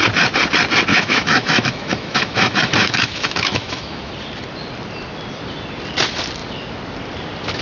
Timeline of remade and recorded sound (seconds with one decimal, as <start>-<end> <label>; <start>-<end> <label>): 0.0-0.9 recorded; 0.9-4.1 remade; 4.1-7.6 recorded